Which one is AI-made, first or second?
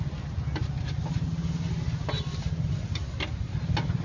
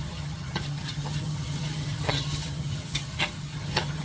second